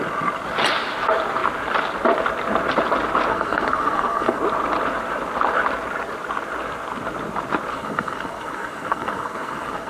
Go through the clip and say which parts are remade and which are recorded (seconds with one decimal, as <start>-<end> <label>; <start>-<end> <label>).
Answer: 0.0-3.3 recorded; 3.3-4.4 remade; 4.4-7.7 recorded; 7.7-9.9 remade